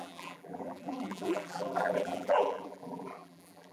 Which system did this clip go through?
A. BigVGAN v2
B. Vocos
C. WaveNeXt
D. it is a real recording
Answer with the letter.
A